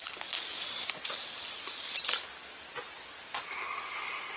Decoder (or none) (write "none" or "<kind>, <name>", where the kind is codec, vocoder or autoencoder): none